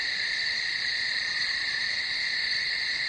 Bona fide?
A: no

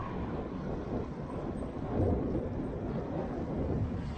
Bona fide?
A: yes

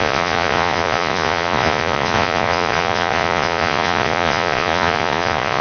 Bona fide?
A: no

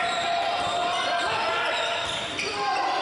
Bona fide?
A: no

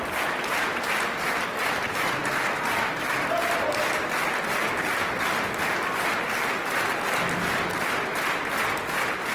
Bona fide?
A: yes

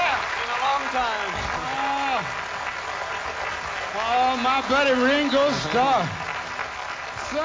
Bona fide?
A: yes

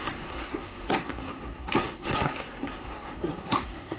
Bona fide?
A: no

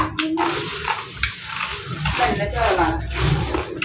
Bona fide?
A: yes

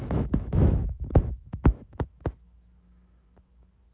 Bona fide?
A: no